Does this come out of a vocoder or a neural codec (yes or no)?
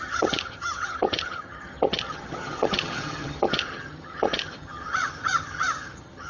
yes